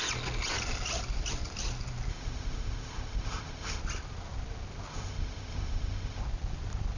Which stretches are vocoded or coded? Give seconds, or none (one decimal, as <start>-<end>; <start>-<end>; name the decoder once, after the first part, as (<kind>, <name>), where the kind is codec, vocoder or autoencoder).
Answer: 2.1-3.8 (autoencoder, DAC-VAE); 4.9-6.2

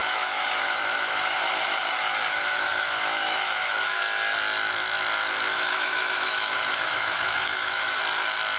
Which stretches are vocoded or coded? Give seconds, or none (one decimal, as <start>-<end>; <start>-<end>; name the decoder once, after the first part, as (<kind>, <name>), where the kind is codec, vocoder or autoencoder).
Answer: 0.0-4.0 (autoencoder, DAC-VAE); 5.5-8.0

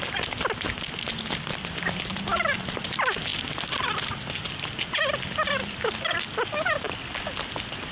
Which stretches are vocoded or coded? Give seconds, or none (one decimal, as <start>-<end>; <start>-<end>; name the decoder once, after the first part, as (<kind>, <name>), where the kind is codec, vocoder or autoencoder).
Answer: none

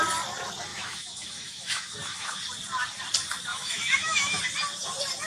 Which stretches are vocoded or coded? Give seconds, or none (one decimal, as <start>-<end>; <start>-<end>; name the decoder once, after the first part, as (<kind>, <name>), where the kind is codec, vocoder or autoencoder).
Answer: 0.7-2.4 (autoencoder, DAC-VAE); 3.5-4.4

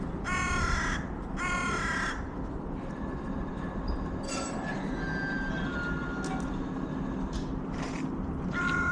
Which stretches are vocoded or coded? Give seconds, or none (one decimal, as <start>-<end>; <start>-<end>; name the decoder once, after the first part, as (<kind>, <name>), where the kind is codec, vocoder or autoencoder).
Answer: none